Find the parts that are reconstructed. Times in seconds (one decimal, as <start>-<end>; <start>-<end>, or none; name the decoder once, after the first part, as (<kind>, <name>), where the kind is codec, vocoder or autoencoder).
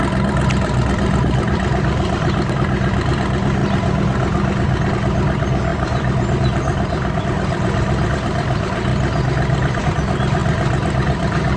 0.0-3.6 (vocoder, BigVGAN v2); 4.9-8.9; 9.8-11.6